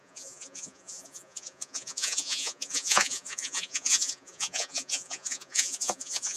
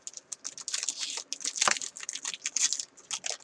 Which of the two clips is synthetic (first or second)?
first